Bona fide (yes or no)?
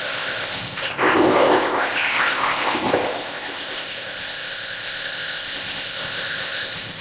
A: no